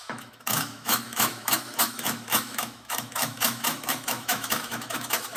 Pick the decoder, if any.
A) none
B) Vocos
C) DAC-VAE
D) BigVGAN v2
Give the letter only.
C